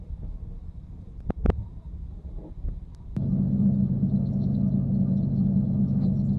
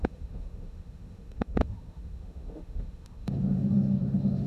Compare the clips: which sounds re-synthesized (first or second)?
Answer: second